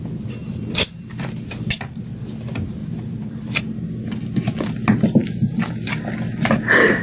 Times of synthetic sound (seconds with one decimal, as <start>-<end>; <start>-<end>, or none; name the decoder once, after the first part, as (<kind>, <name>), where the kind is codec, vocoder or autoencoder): 0.4-1.1 (vocoder, BigVGAN v2); 2.8-3.6; 5.2-6.0